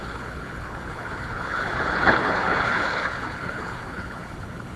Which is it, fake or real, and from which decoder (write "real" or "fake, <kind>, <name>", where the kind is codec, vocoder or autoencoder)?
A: fake, codec, HILCodec